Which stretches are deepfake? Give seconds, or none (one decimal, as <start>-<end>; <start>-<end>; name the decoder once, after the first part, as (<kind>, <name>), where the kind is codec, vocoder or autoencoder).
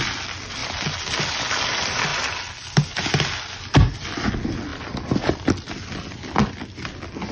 none